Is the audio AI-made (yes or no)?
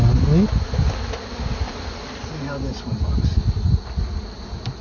no